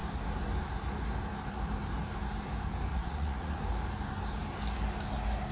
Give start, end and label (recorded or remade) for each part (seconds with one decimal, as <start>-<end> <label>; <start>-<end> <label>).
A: 0.0-2.9 recorded; 2.9-3.6 remade; 3.6-5.5 recorded